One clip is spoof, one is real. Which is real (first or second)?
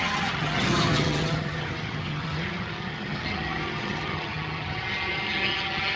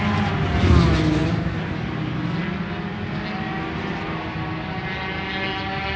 second